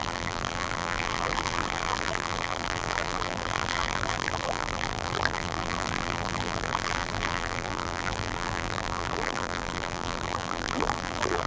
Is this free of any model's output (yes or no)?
no